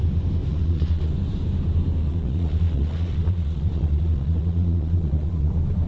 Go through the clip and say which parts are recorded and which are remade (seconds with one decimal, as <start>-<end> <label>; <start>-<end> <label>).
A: 0.0-0.5 recorded; 0.5-1.1 remade; 1.1-2.0 recorded; 2.0-5.5 remade; 5.5-5.9 recorded